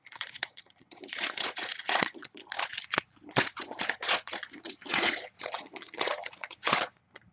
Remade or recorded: remade